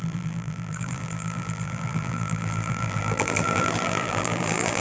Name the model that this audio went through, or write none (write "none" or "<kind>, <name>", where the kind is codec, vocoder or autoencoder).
vocoder, BigVGAN v2